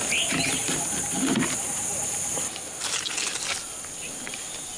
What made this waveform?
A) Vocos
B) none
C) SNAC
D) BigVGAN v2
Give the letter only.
B